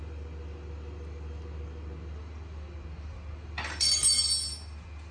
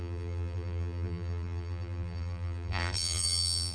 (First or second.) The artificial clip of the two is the second